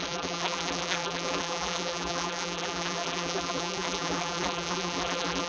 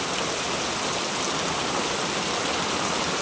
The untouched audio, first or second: second